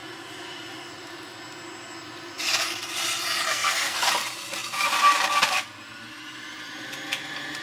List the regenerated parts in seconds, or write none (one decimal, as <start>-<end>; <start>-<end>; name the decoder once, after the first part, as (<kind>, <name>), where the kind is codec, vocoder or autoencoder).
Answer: 3.5-4.1 (codec, SNAC)